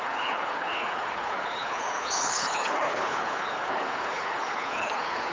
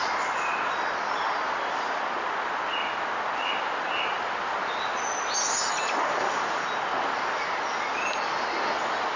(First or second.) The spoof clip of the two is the first